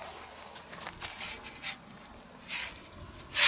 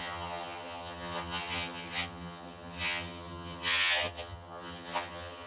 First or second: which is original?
first